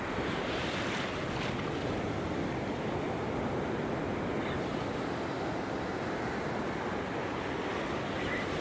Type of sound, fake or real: real